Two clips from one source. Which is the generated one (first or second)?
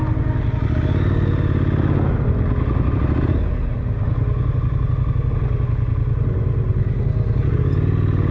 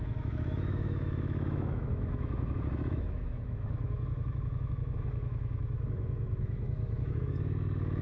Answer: second